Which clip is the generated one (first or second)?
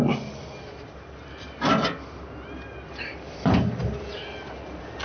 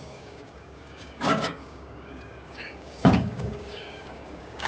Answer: second